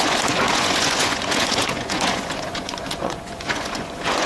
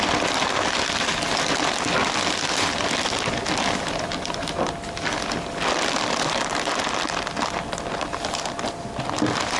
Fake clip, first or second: first